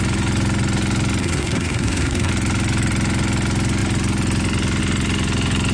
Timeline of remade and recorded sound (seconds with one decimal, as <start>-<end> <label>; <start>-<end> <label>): 0.0-1.2 recorded; 1.2-2.3 remade; 2.3-5.7 recorded